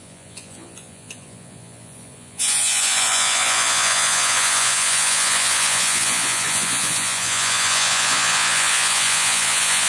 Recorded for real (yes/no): no